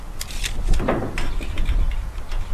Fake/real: real